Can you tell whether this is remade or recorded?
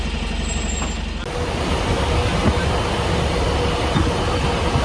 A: recorded